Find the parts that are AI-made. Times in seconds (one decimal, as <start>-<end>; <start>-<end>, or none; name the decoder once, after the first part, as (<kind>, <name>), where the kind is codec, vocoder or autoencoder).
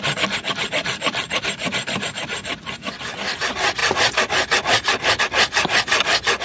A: 0.8-2.1 (vocoder, BigVGAN v2)